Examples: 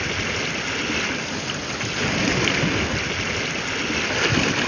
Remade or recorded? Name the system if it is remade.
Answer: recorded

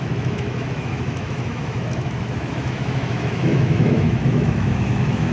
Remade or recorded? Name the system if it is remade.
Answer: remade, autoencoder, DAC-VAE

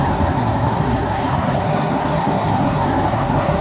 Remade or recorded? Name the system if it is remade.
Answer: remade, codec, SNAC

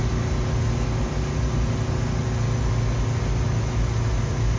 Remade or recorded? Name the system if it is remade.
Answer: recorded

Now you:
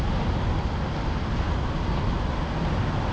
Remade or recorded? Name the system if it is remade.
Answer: recorded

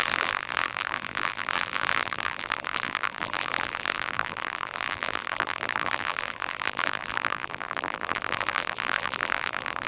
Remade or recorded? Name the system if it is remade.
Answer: remade, vocoder, BigVGAN v2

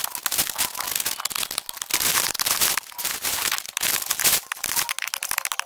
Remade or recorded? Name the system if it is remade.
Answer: recorded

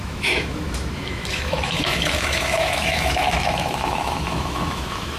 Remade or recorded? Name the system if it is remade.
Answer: remade, autoencoder, DAC-VAE